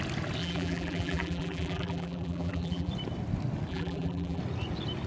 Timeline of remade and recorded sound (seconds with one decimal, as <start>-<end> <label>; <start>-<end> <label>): 0.0-0.4 recorded; 0.4-2.9 remade; 2.9-3.7 recorded; 3.7-4.4 remade; 4.4-5.1 recorded